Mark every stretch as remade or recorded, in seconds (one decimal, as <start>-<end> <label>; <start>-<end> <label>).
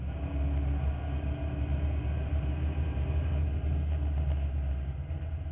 0.0-5.5 recorded